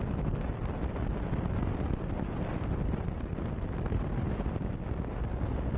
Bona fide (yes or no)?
yes